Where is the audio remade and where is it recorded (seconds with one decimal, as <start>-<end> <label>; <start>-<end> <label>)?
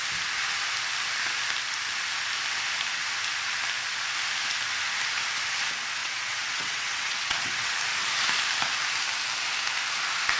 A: 0.0-6.0 recorded; 6.0-7.8 remade; 7.8-10.4 recorded